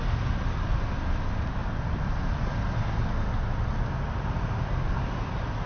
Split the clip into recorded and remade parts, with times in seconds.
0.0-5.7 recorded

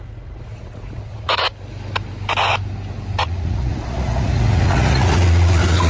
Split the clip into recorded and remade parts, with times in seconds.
0.0-1.5 remade; 1.5-3.2 recorded; 3.2-5.9 remade

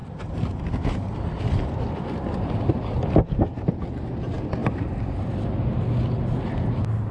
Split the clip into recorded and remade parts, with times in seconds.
0.0-1.1 remade; 1.1-4.6 recorded; 4.6-5.3 remade; 5.3-7.1 recorded